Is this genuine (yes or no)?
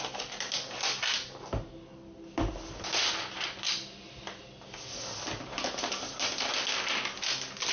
yes